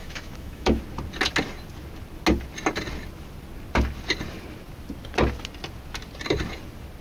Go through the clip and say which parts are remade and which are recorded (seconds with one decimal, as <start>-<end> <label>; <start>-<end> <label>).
0.0-0.8 remade; 0.8-7.0 recorded